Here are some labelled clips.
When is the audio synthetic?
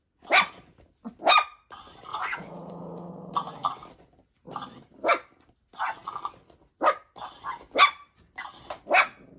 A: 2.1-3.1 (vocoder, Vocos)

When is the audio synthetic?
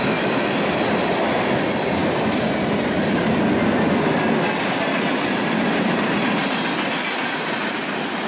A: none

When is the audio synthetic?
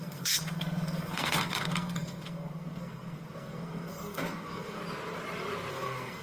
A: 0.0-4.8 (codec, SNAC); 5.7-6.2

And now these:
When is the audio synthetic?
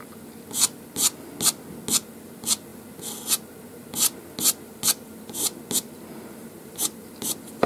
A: 6.4-7.1 (vocoder, BigVGAN v2)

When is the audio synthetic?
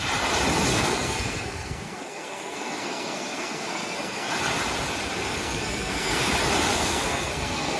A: 0.7-4.3 (codec, SNAC); 5.3-6.2; 6.7-7.8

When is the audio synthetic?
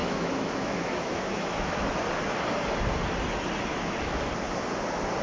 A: 0.0-2.0 (autoencoder, DAC-VAE); 3.7-4.2